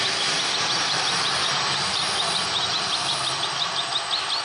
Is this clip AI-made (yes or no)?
no